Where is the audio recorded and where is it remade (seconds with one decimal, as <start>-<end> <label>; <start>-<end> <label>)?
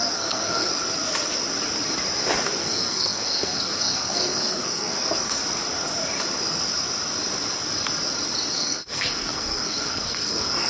0.0-0.7 remade; 0.7-2.6 recorded; 2.6-5.4 remade; 5.4-8.5 recorded; 8.5-10.7 remade